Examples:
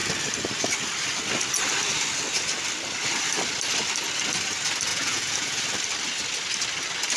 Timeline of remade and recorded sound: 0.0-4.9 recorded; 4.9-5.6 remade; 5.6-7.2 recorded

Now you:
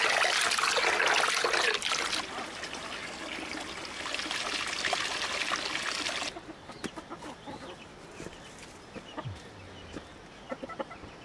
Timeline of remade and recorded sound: 0.0-11.2 recorded

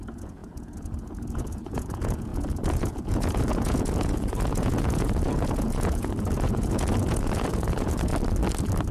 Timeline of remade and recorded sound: 0.0-8.1 remade; 8.1-8.9 recorded

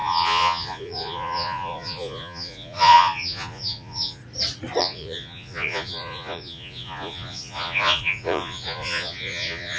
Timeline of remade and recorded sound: 0.0-4.2 remade; 4.2-4.8 recorded; 4.8-9.8 remade

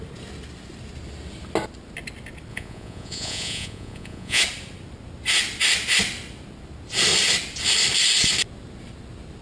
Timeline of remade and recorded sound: 0.0-2.5 recorded; 2.5-4.4 remade; 4.4-9.4 recorded

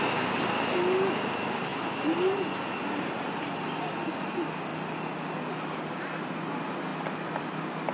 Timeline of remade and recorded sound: 0.0-7.9 recorded

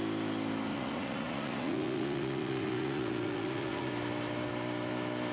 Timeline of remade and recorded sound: 0.0-0.7 recorded; 0.7-3.9 remade; 3.9-5.3 recorded